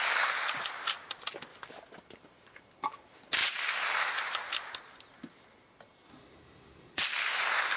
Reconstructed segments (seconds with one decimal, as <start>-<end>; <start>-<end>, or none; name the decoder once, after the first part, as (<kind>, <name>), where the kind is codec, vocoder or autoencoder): 6.1-7.0 (codec, SNAC)